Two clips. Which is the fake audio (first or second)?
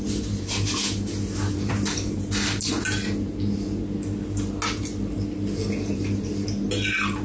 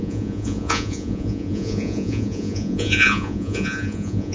second